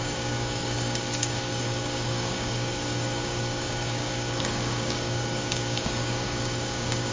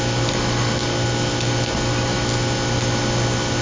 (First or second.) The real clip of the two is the second